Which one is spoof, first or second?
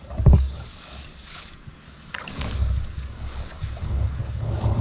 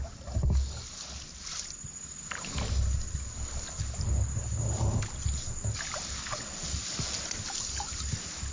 first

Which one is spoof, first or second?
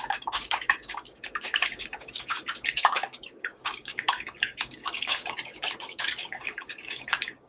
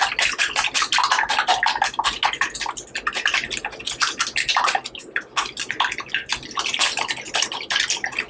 first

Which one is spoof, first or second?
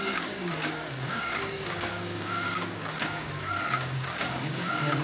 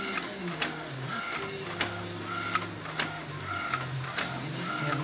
first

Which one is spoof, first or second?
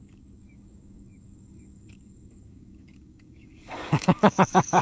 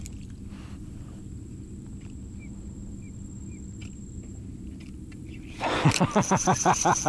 first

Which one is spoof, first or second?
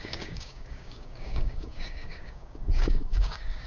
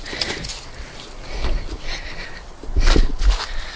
first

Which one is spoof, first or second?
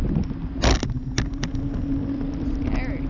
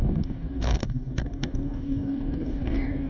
second